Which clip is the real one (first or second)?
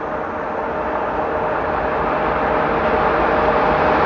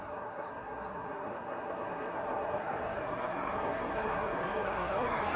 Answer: first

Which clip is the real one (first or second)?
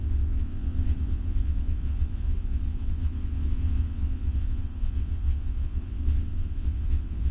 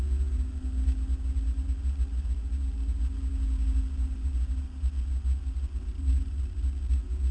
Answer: second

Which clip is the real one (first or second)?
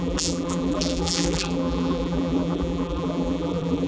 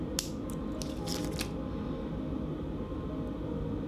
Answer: second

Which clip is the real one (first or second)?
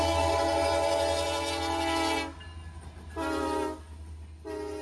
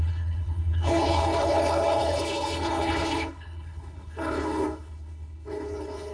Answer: first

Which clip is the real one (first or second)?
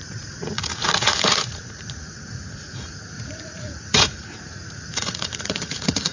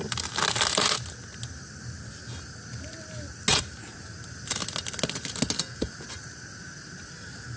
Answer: second